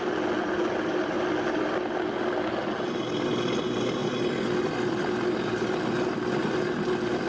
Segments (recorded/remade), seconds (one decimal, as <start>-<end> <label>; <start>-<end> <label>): 0.0-7.3 recorded